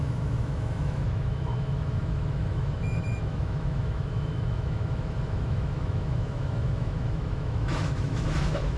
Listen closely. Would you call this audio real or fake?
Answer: fake